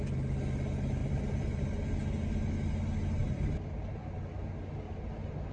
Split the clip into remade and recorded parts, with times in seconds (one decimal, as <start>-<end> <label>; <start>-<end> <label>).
0.0-1.0 recorded; 1.0-1.6 remade; 1.6-3.2 recorded; 3.2-3.9 remade; 3.9-5.5 recorded